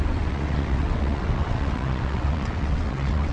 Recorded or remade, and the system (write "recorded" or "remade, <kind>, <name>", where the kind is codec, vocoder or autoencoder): remade, vocoder, WaveNeXt